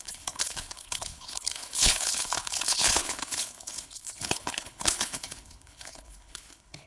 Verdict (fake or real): fake